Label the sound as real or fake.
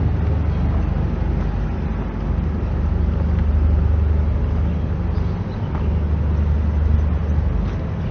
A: real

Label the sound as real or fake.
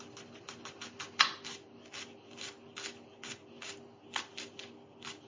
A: real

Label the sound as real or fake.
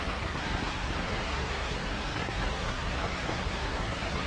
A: fake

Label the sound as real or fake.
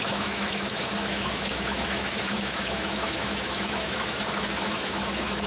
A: fake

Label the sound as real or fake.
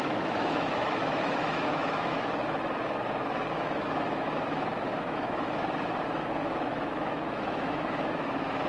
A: fake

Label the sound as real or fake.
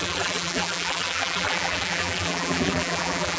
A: fake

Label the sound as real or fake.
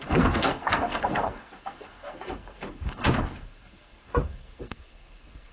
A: fake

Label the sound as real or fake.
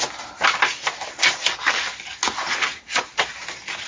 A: real